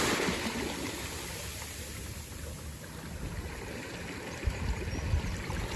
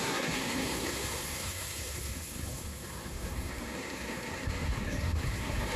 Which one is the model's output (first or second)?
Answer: second